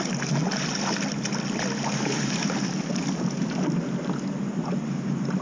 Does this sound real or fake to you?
real